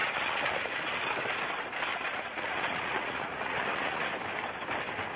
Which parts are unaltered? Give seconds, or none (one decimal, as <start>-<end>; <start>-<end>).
0.8-1.9; 4.1-5.2

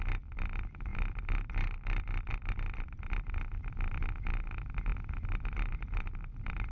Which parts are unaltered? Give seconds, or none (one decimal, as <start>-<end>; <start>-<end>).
none

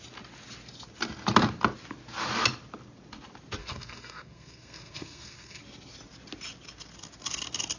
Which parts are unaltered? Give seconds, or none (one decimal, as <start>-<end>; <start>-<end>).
0.0-3.6; 5.6-7.8

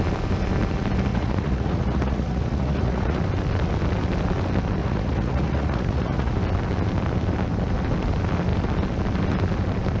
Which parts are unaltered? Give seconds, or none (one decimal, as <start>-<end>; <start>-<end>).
0.0-1.1; 3.2-4.8; 6.3-10.0

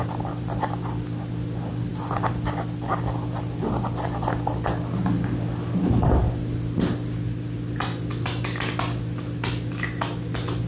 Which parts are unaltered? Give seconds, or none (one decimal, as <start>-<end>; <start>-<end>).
0.0-10.7

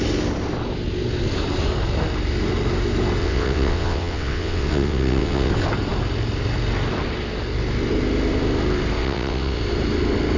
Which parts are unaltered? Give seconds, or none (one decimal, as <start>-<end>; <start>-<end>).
0.0-3.2; 5.5-9.0; 9.6-10.4

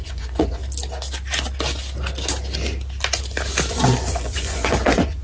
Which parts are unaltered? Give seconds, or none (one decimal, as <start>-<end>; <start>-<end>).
0.6-3.7

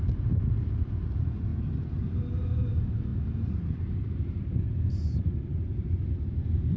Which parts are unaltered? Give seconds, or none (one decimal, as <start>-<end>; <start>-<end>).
1.5-2.7